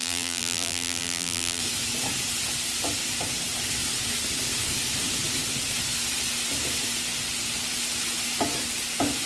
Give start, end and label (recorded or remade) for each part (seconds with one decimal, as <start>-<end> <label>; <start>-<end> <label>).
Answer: 0.0-1.6 remade; 1.6-9.3 recorded